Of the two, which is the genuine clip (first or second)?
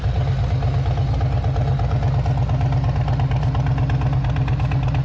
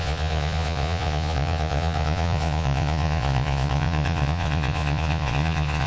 first